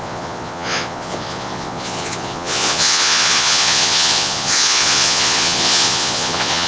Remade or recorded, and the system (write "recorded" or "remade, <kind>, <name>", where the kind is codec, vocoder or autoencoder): remade, vocoder, Vocos